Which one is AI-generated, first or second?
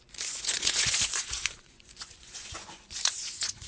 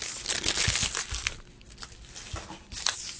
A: first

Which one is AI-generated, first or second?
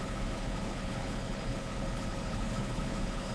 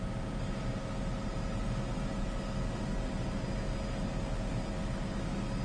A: first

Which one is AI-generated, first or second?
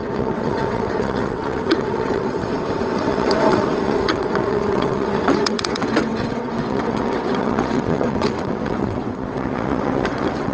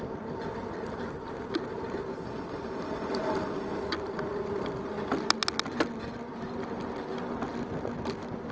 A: first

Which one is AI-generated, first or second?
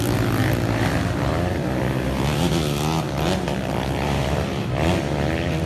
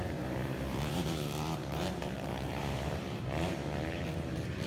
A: second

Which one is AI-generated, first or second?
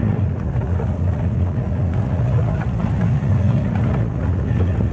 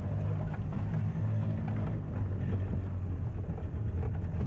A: first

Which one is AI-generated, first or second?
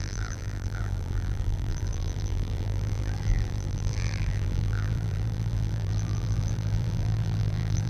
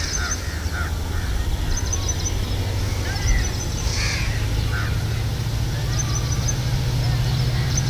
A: first